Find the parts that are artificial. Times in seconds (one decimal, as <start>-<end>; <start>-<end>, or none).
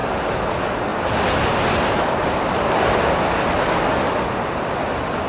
none